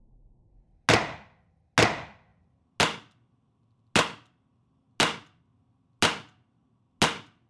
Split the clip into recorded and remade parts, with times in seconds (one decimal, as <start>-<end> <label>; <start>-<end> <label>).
0.0-7.5 recorded